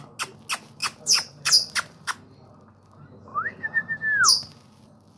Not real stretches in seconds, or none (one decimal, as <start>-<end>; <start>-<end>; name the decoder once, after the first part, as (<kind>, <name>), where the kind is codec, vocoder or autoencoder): 0.8-2.5 (vocoder, BigVGAN v2); 3.3-4.0